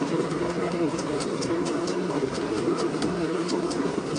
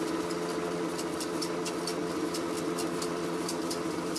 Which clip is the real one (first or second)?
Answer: second